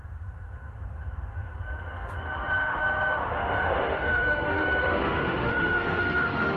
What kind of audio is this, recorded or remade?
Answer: remade